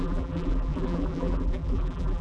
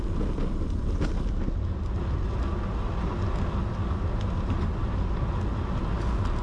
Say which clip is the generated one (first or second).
first